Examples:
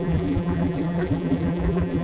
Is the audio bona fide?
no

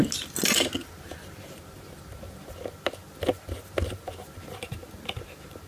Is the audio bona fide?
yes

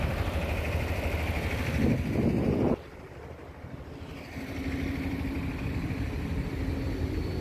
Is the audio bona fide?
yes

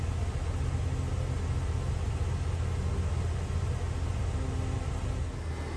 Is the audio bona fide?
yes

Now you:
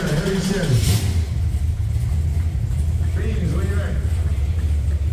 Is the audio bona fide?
yes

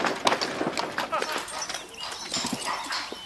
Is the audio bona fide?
yes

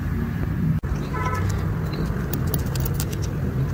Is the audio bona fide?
yes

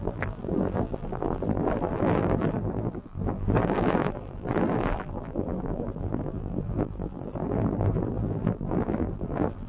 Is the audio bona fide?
no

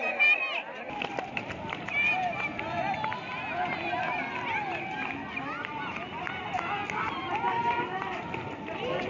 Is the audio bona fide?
yes